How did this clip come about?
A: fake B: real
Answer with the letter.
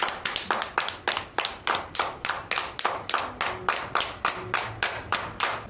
B